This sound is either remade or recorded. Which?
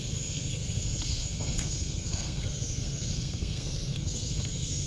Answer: remade